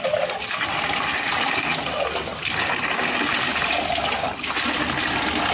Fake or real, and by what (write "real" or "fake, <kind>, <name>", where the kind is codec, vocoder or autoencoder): real